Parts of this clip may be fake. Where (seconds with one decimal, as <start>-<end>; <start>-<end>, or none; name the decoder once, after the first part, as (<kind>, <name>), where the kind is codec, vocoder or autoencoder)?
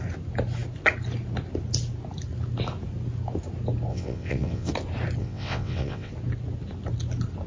3.9-4.7 (vocoder, WaveNeXt); 5.2-6.1